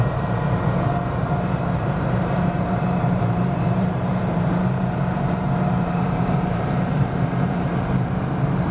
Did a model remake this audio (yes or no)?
yes